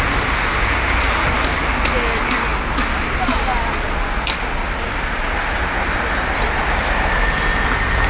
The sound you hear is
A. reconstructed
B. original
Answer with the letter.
B